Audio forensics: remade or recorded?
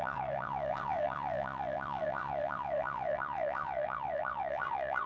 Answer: remade